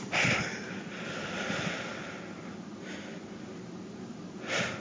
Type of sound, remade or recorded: recorded